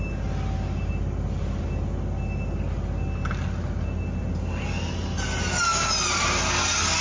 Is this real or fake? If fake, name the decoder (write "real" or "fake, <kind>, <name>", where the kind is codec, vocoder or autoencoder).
real